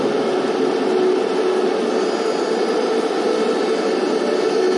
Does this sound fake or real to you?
real